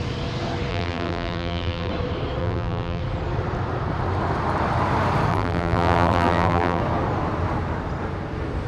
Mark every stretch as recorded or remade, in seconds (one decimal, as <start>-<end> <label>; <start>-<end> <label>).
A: 0.0-0.7 recorded; 0.7-1.9 remade; 1.9-2.4 recorded; 2.4-3.0 remade; 3.0-5.3 recorded; 5.3-6.8 remade; 6.8-8.7 recorded